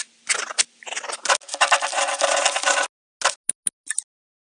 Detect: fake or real real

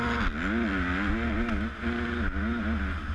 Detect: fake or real real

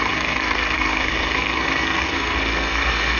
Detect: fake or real fake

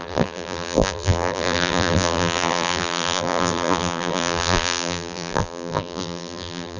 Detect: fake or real fake